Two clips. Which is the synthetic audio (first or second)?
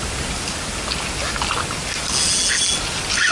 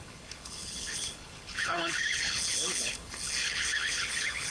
second